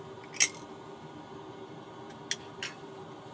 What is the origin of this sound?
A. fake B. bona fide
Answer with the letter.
B